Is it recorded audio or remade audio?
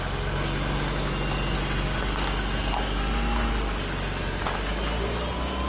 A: recorded